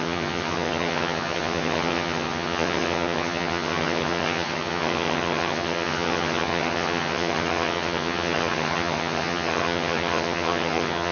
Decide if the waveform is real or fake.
fake